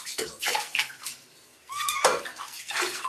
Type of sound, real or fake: fake